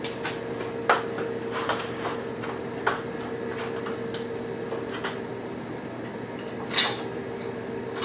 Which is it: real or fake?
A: real